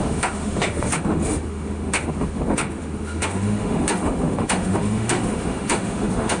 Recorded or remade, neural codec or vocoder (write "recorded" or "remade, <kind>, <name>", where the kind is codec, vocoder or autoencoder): remade, autoencoder, DAC-VAE